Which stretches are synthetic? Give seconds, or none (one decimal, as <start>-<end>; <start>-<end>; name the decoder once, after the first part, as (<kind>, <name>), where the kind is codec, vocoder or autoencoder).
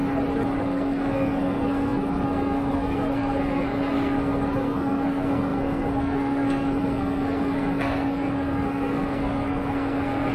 0.6-10.3 (codec, SNAC)